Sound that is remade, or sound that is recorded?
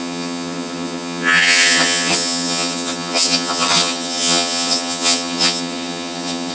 remade